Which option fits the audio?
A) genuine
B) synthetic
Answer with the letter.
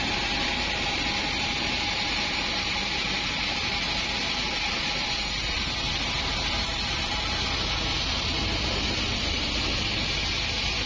A